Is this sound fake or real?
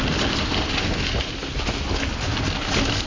real